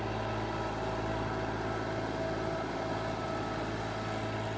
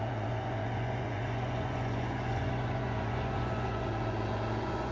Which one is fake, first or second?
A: second